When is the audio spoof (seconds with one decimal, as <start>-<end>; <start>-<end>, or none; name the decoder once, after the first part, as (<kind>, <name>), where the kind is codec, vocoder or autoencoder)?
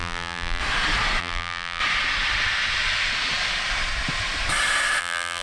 0.0-0.6 (vocoder, BigVGAN v2); 1.2-1.8; 5.0-5.4